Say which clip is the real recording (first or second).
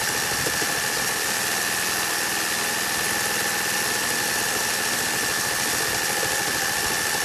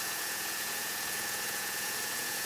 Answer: first